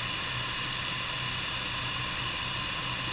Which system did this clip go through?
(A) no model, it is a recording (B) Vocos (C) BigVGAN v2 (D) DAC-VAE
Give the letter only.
A